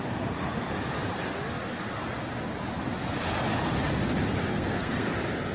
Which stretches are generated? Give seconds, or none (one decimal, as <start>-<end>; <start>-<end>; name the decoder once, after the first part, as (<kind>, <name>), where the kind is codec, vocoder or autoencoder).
4.5-5.1 (codec, SNAC)